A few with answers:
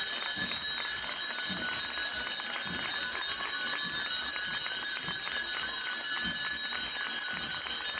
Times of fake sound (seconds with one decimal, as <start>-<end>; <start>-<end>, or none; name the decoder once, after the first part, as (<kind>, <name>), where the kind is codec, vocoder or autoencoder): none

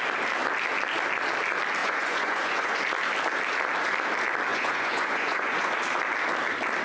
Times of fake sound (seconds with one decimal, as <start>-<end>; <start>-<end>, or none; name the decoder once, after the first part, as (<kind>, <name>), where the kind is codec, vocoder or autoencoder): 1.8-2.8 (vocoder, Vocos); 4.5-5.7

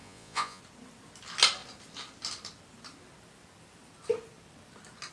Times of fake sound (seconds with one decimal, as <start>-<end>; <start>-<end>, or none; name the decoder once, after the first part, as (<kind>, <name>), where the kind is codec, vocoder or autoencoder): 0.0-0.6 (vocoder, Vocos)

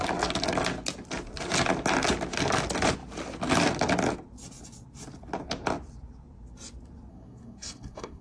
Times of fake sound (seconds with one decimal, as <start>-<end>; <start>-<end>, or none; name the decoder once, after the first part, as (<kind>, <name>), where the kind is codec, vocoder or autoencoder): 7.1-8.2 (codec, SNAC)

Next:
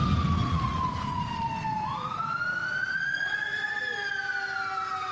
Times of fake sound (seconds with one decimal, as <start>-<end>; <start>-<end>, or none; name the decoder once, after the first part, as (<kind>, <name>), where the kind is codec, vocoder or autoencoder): 0.4-1.3 (vocoder, Vocos); 2.6-3.7

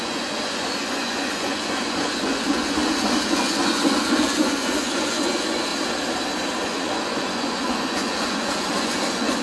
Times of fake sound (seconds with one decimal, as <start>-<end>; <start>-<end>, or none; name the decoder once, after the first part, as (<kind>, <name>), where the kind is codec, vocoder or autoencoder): 0.0-5.7 (vocoder, Vocos); 6.6-9.4

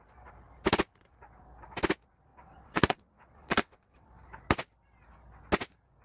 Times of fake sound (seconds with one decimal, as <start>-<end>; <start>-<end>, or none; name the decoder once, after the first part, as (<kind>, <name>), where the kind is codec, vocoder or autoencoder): 2.3-4.1 (vocoder, WaveNeXt)

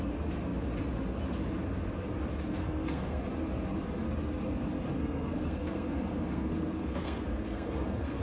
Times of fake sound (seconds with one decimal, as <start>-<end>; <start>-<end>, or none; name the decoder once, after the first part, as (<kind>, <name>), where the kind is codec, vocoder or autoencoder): 2.6-3.2 (codec, SNAC); 5.0-8.2